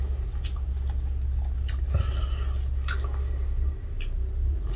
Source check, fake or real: real